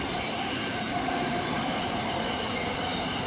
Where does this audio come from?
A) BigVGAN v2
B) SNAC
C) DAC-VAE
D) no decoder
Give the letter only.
D